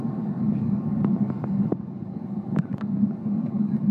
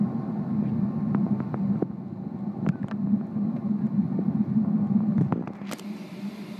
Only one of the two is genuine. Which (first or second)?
second